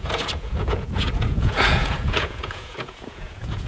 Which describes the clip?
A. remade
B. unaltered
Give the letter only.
A